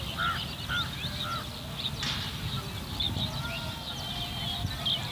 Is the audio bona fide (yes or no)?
yes